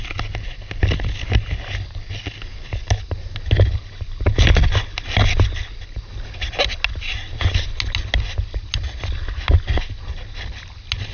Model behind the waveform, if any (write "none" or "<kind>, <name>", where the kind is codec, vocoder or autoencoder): none